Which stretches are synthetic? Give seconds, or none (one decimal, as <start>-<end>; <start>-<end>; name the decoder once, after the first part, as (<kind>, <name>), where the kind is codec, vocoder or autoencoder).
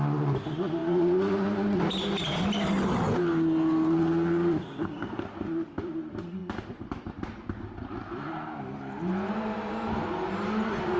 none